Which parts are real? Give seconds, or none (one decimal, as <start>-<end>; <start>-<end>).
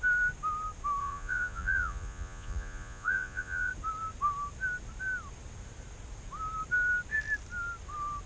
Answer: 0.0-1.0; 3.7-8.3